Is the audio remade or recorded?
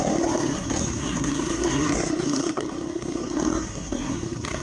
remade